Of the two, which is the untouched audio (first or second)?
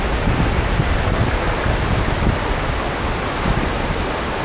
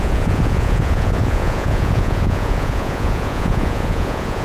first